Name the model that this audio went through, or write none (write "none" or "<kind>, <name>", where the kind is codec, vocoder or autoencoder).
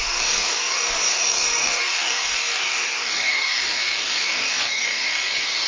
codec, DAC